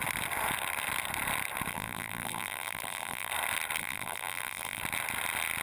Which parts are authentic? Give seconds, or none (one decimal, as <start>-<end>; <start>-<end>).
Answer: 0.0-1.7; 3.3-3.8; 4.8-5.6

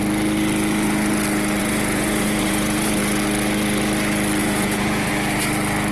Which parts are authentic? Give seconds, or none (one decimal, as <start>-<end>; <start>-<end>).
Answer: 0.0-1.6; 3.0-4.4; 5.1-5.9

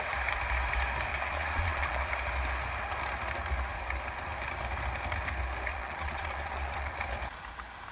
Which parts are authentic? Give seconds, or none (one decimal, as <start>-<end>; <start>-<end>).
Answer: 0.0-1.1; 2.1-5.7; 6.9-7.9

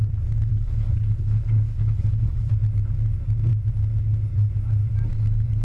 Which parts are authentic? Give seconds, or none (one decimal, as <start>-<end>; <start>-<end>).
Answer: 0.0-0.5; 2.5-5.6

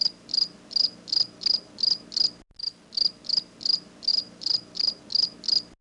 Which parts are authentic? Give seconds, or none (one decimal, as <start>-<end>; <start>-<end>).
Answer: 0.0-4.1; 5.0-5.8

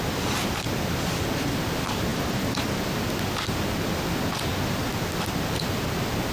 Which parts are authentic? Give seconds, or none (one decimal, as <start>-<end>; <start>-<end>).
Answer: 0.0-2.1; 2.8-6.3

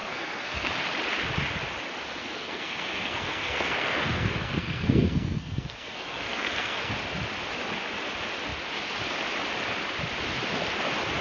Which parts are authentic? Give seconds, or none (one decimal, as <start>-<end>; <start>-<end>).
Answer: 0.7-2.2; 6.9-11.2

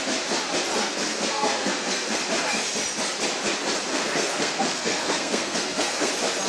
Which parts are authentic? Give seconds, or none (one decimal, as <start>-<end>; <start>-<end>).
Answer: 0.0-0.8; 2.2-3.9; 6.1-6.5